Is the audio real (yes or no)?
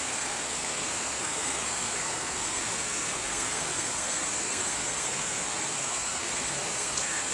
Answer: no